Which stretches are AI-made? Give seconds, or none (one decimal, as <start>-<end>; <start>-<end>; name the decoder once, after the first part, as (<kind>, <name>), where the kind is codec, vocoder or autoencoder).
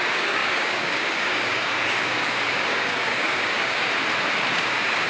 0.0-3.9 (codec, DAC); 4.5-5.1